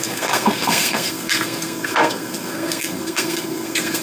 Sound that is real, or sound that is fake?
fake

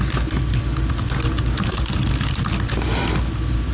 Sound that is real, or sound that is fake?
real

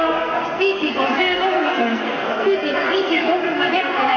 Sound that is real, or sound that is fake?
fake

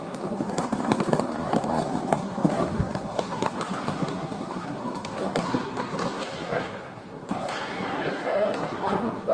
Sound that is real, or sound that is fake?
fake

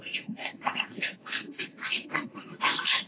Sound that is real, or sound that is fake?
fake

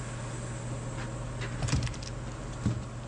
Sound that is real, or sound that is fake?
real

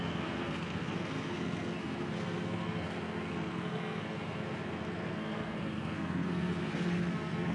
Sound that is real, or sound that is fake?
fake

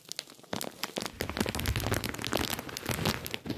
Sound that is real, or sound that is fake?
real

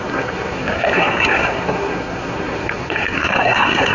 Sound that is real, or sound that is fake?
fake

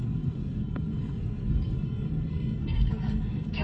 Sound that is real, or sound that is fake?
fake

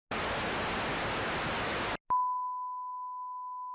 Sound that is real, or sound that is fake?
real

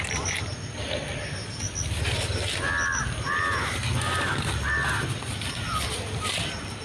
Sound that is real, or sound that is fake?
real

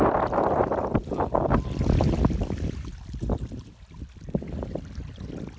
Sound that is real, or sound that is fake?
real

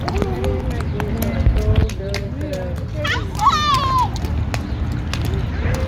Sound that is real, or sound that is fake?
real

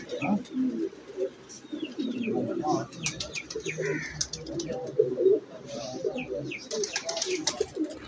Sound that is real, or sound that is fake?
real